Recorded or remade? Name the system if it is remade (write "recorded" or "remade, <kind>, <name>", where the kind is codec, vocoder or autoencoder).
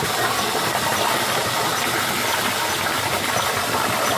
recorded